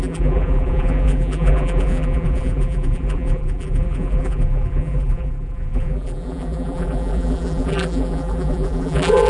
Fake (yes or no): yes